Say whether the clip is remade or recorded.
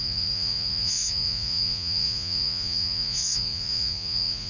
remade